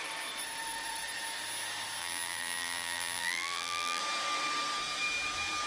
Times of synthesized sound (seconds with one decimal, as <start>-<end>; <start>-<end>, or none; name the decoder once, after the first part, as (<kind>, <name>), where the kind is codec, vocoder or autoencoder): 2.0-4.0 (vocoder, BigVGAN v2)